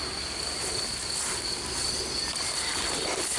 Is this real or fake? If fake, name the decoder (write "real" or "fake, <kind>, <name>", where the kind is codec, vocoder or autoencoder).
real